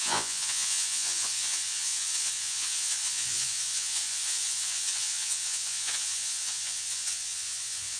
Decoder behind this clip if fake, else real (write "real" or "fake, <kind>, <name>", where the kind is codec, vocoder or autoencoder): fake, vocoder, Vocos